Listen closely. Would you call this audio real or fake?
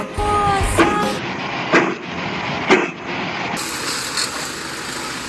real